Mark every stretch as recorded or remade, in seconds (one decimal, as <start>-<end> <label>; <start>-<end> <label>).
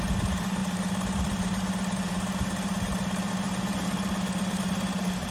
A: 0.0-5.3 remade